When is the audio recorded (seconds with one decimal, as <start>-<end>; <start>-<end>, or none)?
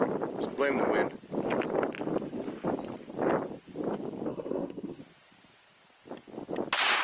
0.0-4.3; 5.0-7.0